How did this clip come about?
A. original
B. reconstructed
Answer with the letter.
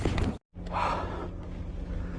A